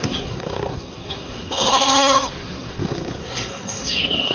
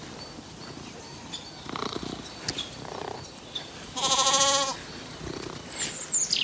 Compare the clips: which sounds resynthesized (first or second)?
first